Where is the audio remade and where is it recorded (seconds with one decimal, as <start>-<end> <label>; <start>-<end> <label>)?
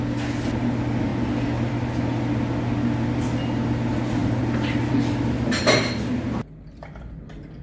0.0-7.6 recorded